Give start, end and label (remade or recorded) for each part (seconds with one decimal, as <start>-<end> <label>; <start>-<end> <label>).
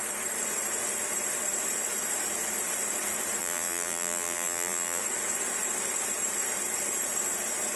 0.0-3.4 recorded; 3.4-5.0 remade; 5.0-7.8 recorded